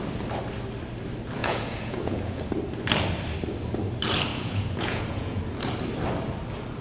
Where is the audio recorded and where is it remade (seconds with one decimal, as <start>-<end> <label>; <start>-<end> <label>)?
0.0-1.4 recorded; 1.4-2.4 remade; 2.4-4.3 recorded; 4.3-5.4 remade; 5.4-6.8 recorded